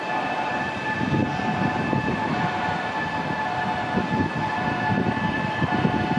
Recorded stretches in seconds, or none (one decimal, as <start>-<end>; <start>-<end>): 0.0-6.2